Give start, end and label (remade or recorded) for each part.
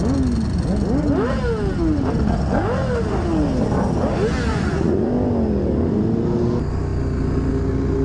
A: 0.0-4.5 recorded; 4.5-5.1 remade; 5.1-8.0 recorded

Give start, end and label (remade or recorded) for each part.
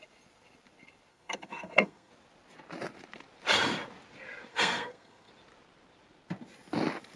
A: 0.0-1.1 recorded; 1.1-2.1 remade; 2.1-4.5 recorded; 4.5-5.3 remade; 5.3-7.2 recorded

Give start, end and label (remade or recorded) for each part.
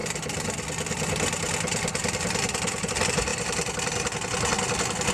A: 0.0-5.1 recorded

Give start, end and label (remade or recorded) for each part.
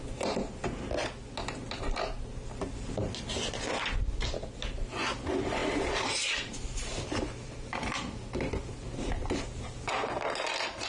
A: 0.0-10.9 recorded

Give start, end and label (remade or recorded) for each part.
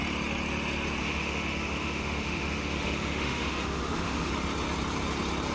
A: 0.0-1.0 recorded; 1.0-4.3 remade; 4.3-5.5 recorded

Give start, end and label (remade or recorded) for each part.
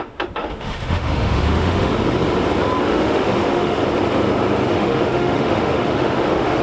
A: 0.0-1.9 remade; 1.9-2.8 recorded; 2.8-3.8 remade; 3.8-4.7 recorded; 4.7-6.6 remade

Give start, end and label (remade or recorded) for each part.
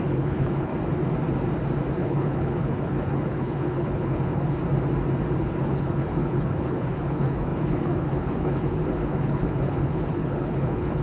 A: 0.0-0.7 remade; 0.7-2.0 recorded; 2.0-4.6 remade; 4.6-5.4 recorded; 5.4-11.0 remade